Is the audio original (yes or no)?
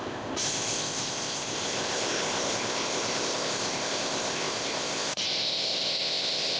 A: no